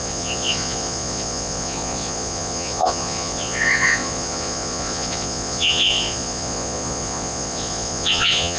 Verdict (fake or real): fake